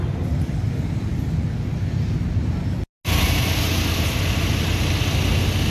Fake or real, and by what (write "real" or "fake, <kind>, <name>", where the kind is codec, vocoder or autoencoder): real